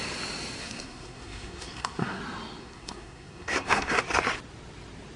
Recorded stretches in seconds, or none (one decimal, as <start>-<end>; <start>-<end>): 0.0-0.6; 2.2-2.6; 4.0-5.2